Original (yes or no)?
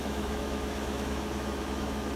no